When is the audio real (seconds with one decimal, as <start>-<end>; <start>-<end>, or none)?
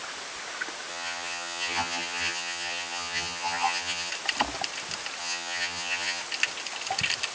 0.0-0.9; 4.1-5.2; 6.2-7.3